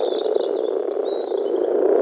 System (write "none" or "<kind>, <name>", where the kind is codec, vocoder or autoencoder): none